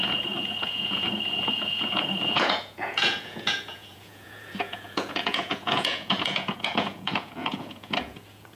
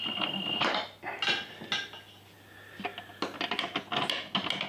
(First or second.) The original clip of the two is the second